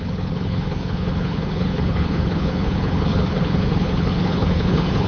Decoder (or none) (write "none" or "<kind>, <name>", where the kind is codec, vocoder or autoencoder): codec, HILCodec